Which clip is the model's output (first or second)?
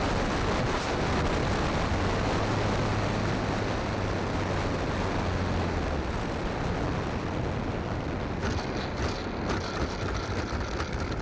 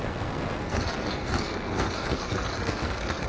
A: second